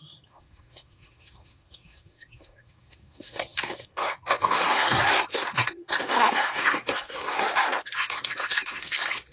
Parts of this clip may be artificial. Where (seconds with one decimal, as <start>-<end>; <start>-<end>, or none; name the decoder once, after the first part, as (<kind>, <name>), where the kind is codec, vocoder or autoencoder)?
0.0-9.3 (codec, SNAC)